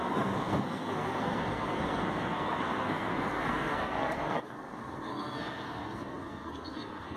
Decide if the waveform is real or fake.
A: fake